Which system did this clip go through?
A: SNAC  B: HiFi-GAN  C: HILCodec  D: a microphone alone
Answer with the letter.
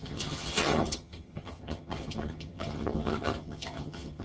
B